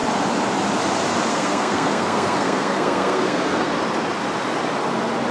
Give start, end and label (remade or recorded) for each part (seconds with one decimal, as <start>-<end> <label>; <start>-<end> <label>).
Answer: 0.0-1.3 recorded; 1.3-3.7 remade; 3.7-5.3 recorded

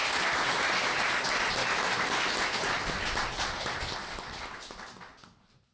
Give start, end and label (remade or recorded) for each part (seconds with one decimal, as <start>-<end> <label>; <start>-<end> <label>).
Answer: 0.0-5.7 recorded

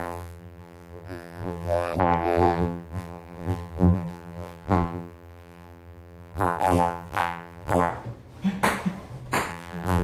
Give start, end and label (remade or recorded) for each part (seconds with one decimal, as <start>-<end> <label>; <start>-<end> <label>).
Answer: 0.0-7.9 remade; 7.9-9.5 recorded; 9.5-10.0 remade

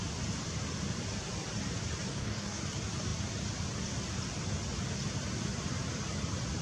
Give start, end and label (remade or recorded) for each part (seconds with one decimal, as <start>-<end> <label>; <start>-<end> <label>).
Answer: 0.0-2.1 recorded; 2.1-2.6 remade; 2.6-6.6 recorded

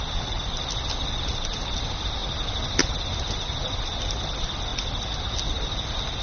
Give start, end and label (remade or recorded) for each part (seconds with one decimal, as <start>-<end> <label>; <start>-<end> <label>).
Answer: 0.0-6.2 recorded

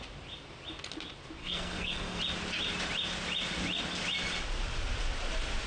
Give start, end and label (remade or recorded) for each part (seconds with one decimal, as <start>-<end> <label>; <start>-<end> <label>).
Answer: 0.0-1.4 recorded; 1.4-2.2 remade; 2.2-5.7 recorded

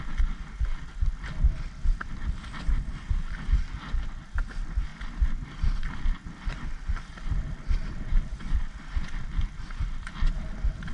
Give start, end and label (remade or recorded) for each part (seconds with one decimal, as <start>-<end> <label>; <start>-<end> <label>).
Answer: 0.0-10.9 recorded